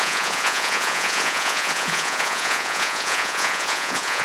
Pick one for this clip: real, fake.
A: fake